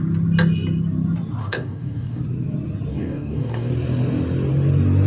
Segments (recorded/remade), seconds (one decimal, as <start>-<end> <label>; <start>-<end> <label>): 0.0-1.4 recorded; 1.4-2.2 remade; 2.2-2.9 recorded; 2.9-3.7 remade; 3.7-5.1 recorded